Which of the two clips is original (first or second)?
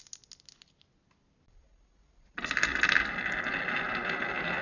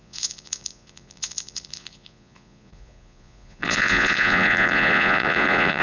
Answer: first